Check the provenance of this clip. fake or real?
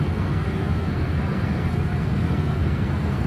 fake